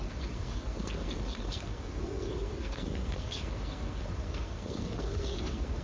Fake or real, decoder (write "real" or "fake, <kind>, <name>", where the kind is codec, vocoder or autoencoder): fake, codec, SNAC